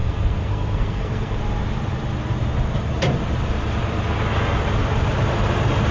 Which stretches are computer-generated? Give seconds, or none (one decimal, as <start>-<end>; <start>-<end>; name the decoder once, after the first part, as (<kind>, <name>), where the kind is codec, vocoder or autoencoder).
0.0-1.4 (codec, SNAC)

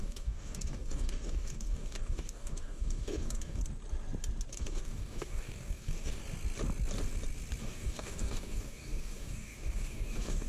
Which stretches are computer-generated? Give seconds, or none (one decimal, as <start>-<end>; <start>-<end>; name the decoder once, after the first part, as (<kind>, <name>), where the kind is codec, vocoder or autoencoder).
0.0-3.6 (codec, DAC); 4.5-6.2; 7.6-10.5

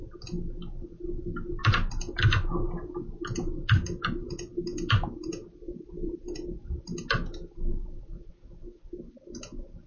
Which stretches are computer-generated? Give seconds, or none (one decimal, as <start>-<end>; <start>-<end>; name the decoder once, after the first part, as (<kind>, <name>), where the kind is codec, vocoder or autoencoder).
7.7-8.3 (vocoder, BigVGAN v2)

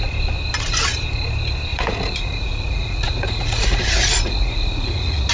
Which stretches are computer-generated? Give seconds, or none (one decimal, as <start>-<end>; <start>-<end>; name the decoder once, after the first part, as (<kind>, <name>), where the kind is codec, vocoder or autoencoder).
1.7-5.3 (vocoder, Vocos)

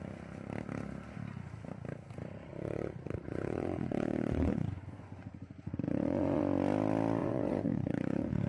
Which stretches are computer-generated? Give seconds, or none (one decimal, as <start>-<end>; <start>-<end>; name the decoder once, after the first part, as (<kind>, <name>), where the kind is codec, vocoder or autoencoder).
2.5-6.4 (vocoder, Vocos); 7.2-8.5

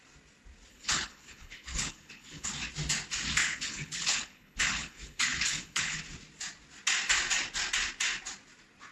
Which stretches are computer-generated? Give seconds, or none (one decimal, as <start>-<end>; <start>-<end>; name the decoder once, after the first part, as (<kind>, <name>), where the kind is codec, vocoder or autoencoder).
0.7-2.5 (codec, HILCodec); 3.4-6.0

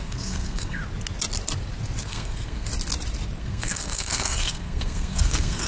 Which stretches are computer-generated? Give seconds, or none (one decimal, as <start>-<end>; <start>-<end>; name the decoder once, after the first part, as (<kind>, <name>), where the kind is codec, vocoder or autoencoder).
0.0-0.8 (codec, SNAC); 2.0-2.7; 3.4-5.7

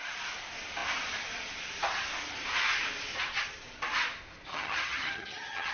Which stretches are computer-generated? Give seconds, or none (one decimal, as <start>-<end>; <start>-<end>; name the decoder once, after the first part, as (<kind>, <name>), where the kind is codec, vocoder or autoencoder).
4.5-5.7 (vocoder, HiFi-GAN)